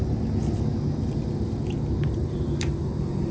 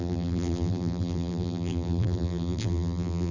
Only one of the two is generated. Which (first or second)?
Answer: second